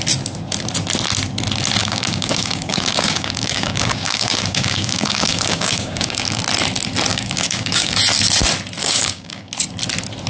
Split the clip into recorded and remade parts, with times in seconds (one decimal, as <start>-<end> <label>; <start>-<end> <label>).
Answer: 0.0-1.8 recorded; 1.8-6.4 remade; 6.4-7.1 recorded; 7.1-8.0 remade; 8.0-8.8 recorded; 8.8-9.5 remade; 9.5-10.3 recorded